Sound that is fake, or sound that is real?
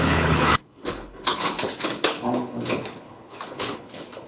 fake